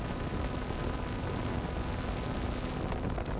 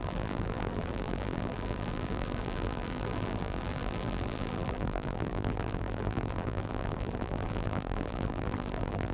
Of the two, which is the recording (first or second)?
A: first